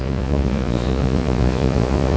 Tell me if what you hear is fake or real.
fake